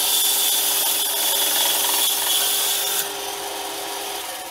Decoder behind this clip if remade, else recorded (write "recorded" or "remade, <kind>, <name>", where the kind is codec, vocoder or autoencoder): recorded